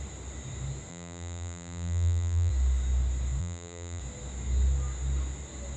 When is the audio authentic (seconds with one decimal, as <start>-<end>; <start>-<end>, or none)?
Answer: 0.0-0.9; 2.5-3.4; 4.0-5.8